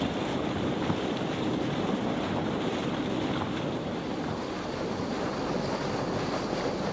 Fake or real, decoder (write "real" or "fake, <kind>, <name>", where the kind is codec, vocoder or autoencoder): real